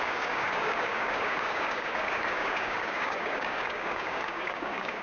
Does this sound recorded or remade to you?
remade